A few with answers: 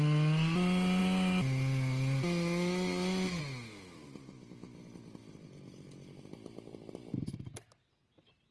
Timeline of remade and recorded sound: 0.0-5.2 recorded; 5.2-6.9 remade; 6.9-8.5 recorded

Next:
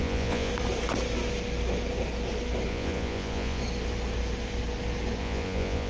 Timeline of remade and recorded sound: 0.0-0.5 remade; 0.5-2.7 recorded; 2.7-3.6 remade; 3.6-5.2 recorded; 5.2-5.9 remade

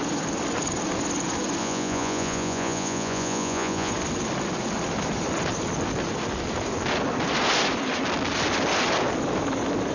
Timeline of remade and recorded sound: 0.0-1.6 recorded; 1.6-3.9 remade; 3.9-9.9 recorded

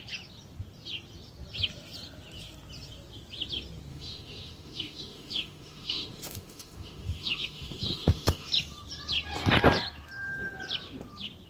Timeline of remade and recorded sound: 0.0-3.9 recorded; 3.9-8.5 remade; 8.5-11.5 recorded

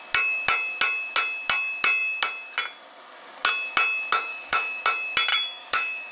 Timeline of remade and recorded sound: 0.0-4.3 recorded; 4.3-4.8 remade; 4.8-5.3 recorded; 5.3-6.1 remade

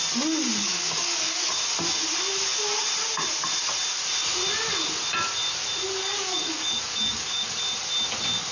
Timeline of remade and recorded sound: 0.0-0.6 recorded; 0.6-1.5 remade; 1.5-6.0 recorded; 6.0-7.5 remade; 7.5-8.5 recorded